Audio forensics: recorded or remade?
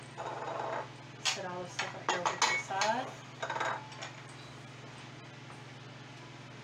recorded